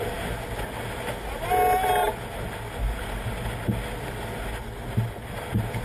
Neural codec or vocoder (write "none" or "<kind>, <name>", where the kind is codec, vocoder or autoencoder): none